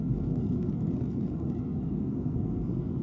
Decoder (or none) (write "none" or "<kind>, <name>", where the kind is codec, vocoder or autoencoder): codec, SNAC